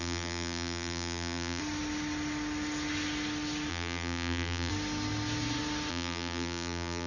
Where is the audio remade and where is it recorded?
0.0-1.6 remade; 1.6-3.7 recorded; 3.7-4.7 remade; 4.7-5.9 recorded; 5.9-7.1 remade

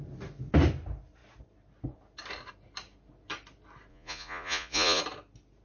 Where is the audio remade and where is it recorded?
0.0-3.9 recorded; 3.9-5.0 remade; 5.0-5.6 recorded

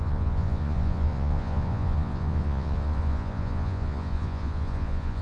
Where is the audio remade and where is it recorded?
0.0-5.2 remade

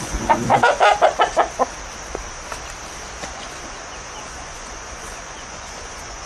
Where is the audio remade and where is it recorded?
0.0-0.5 remade; 0.5-3.2 recorded; 3.2-6.3 remade